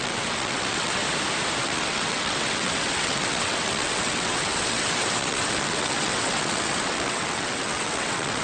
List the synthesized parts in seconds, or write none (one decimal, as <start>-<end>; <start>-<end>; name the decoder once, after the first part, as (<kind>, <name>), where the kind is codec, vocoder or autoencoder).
0.0-1.0 (vocoder, WaveNeXt); 1.6-8.4